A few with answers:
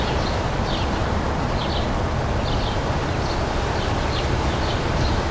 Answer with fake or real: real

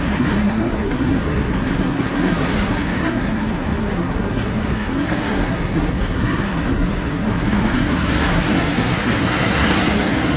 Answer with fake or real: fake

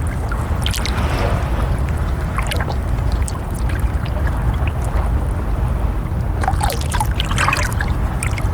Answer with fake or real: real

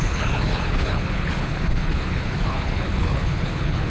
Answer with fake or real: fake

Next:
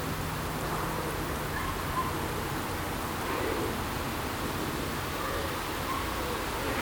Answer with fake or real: real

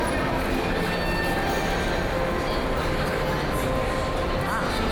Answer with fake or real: real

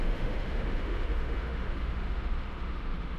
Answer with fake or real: fake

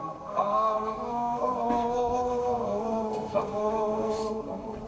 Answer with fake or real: fake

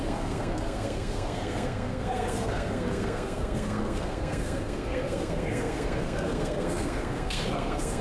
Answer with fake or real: fake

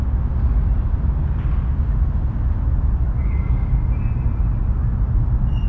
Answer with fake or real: real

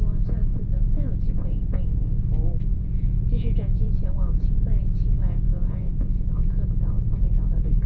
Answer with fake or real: fake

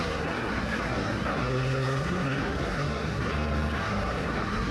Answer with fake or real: fake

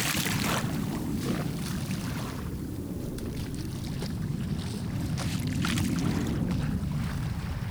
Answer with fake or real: fake